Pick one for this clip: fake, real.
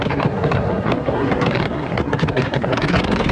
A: fake